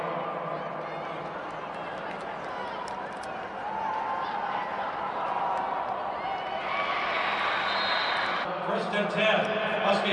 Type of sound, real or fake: real